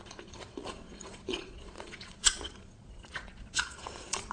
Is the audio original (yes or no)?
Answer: no